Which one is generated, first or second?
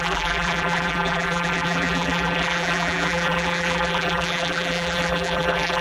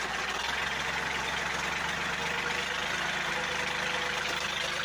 first